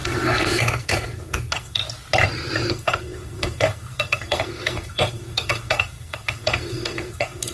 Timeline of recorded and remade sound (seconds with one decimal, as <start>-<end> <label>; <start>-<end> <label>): 0.0-1.8 remade; 1.8-2.7 recorded; 2.7-7.5 remade